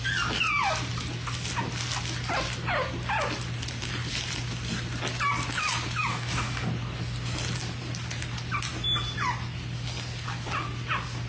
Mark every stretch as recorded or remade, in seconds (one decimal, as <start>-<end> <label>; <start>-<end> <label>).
0.0-6.1 recorded; 6.1-6.7 remade; 6.7-11.3 recorded